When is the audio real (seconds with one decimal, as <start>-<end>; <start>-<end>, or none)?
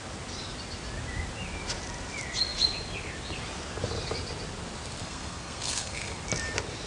0.0-5.0; 6.2-6.9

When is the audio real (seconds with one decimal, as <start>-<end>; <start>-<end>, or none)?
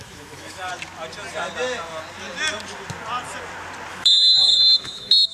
0.7-3.9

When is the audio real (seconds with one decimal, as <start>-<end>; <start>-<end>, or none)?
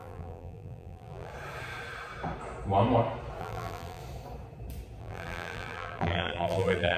1.3-3.4; 4.0-5.0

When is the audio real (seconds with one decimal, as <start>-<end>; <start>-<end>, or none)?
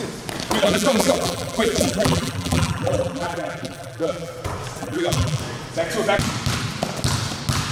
0.0-0.6; 4.3-4.8; 5.4-7.7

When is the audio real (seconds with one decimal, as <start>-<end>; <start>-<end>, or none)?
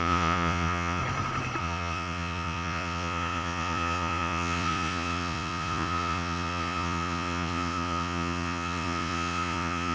1.0-1.6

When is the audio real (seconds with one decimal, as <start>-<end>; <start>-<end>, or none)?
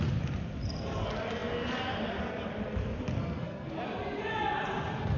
0.0-3.2; 3.7-5.2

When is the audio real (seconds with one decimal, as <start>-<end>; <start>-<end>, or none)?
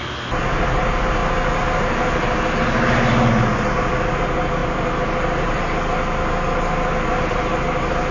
0.0-8.1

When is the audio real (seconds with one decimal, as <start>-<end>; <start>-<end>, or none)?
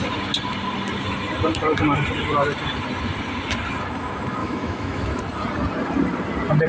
0.0-4.4; 5.2-6.7